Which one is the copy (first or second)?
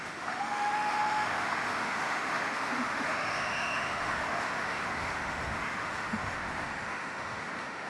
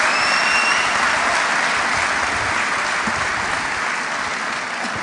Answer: first